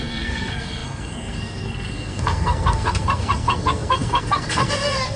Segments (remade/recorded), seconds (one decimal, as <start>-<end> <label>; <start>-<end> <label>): 0.0-5.2 remade